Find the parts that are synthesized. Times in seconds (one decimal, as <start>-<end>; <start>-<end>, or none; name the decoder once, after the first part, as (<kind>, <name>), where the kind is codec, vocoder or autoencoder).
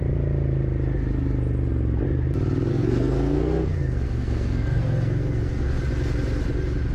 2.7-5.8 (codec, SNAC)